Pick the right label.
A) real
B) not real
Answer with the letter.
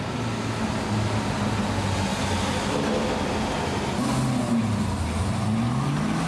A